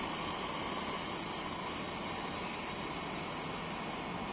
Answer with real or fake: real